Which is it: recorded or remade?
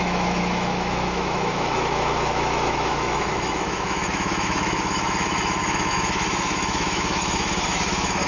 remade